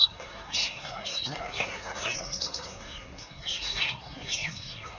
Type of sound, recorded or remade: remade